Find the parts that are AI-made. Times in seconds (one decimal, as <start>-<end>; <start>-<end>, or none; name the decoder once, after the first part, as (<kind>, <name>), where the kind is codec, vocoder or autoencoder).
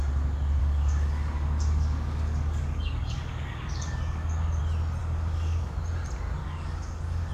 0.6-4.6 (codec, DAC); 5.0-5.7; 6.4-7.3